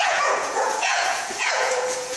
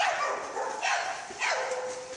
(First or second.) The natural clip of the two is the second